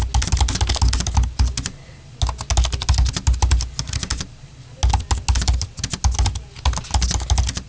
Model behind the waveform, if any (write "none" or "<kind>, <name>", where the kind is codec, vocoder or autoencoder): none